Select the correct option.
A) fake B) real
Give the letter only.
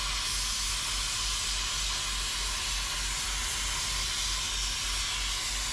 B